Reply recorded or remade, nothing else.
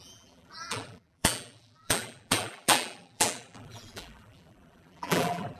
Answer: remade